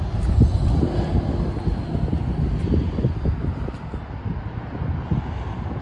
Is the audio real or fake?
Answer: real